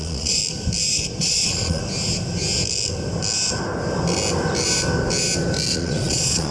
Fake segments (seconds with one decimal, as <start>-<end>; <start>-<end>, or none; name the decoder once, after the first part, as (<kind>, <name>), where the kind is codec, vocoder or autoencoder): 0.0-0.4 (vocoder, Vocos); 1.2-1.8; 5.7-6.5

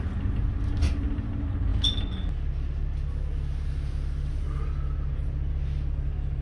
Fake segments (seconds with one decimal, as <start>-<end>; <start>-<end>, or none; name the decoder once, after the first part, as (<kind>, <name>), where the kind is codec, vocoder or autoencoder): none

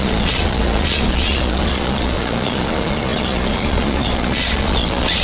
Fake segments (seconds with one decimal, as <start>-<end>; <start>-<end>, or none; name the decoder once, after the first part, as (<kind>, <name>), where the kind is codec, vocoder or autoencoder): 0.0-5.2 (vocoder, Vocos)

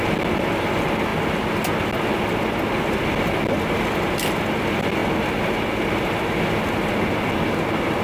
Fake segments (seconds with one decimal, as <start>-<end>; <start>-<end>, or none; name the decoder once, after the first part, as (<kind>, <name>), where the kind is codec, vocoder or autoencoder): none

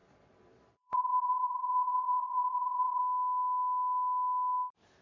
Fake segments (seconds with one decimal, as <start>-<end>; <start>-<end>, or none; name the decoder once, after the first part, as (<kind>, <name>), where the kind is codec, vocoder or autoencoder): 0.0-3.0 (vocoder, Vocos)